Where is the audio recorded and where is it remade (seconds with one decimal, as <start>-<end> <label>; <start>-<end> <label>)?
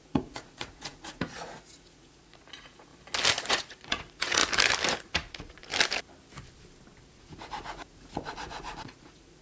0.0-2.9 remade; 2.9-3.5 recorded; 3.5-4.4 remade; 4.4-5.0 recorded; 5.0-5.7 remade; 5.7-7.2 recorded; 7.2-9.4 remade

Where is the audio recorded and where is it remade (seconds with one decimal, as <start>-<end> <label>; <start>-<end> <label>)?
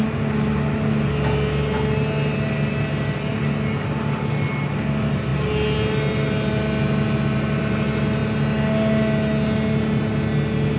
0.0-10.8 recorded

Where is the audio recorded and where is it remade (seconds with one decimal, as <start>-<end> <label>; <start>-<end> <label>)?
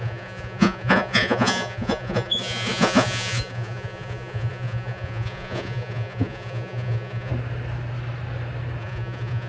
0.0-7.3 remade; 7.3-8.8 recorded; 8.8-9.5 remade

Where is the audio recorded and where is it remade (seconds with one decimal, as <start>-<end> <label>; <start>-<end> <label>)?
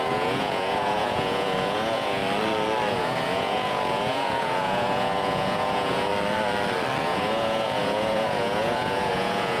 0.0-2.2 remade; 2.2-2.9 recorded; 2.9-6.1 remade; 6.1-7.0 recorded; 7.0-9.6 remade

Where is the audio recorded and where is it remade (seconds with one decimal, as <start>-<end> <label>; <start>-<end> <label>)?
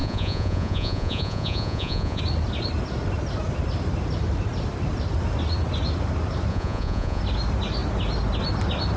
0.0-2.2 remade; 2.2-6.5 recorded; 6.5-7.2 remade; 7.2-9.0 recorded